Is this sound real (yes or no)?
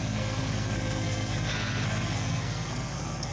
no